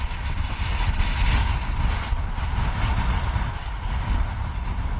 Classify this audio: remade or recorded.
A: recorded